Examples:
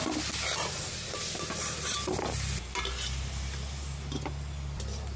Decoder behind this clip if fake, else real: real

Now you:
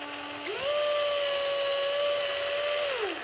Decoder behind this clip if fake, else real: real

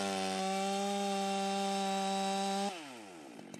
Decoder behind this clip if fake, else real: real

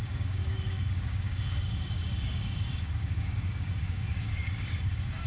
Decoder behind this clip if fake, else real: fake, codec, DAC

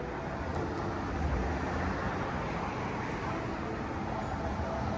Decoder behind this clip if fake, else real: real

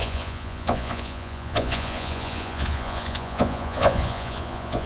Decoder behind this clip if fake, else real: fake, vocoder, Vocos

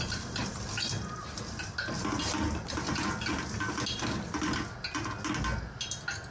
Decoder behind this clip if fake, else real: real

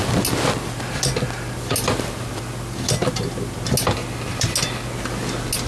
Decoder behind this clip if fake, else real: real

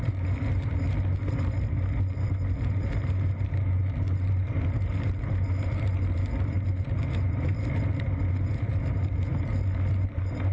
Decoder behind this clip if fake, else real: real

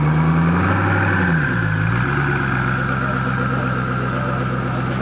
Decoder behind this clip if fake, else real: real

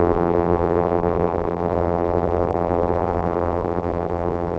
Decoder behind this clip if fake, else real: fake, vocoder, BigVGAN v2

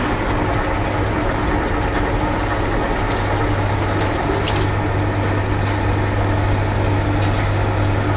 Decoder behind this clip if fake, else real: real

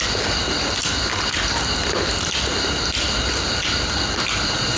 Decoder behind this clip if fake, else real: real